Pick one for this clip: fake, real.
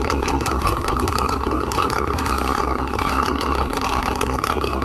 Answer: fake